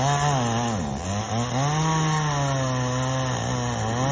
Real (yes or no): yes